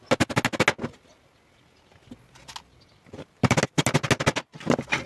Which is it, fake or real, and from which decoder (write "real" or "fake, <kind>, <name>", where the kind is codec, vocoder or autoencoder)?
real